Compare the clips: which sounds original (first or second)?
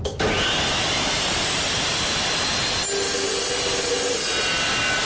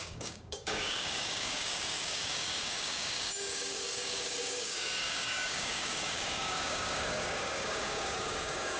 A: first